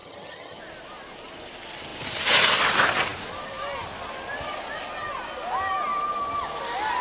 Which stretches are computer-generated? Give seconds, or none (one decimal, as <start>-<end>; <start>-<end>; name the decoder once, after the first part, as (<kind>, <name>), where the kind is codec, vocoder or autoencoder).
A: 0.0-0.6 (vocoder, HiFi-GAN)